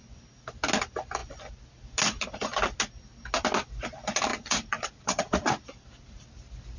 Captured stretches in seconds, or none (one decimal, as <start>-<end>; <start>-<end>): 0.0-4.3; 5.6-6.8